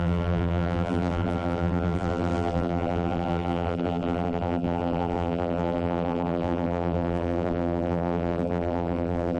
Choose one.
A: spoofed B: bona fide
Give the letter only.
A